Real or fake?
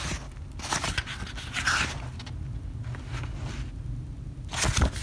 real